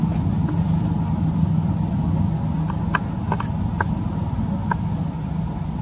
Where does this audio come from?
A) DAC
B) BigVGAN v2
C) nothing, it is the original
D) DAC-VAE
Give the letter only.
C